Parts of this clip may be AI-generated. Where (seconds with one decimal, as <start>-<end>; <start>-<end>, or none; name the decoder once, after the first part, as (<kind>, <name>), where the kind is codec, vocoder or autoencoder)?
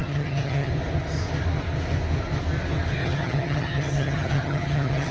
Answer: 0.0-0.7 (vocoder, HiFi-GAN); 3.0-5.1